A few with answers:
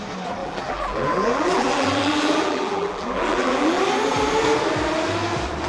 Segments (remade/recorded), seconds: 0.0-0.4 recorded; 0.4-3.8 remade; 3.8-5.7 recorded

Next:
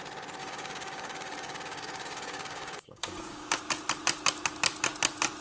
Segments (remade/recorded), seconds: 0.0-0.4 recorded; 0.4-3.6 remade; 3.6-5.4 recorded

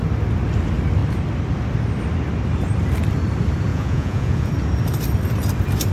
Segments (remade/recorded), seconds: 0.0-3.7 recorded; 3.7-4.5 remade; 4.5-5.9 recorded